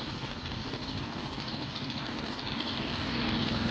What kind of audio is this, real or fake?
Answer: fake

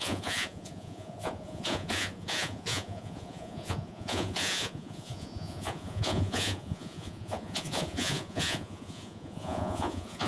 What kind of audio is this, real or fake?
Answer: fake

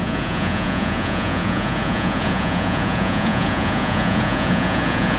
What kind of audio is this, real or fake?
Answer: fake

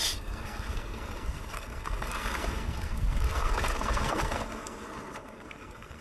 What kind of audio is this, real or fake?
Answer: fake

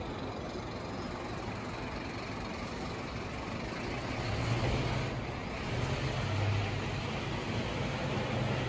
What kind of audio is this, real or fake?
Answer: real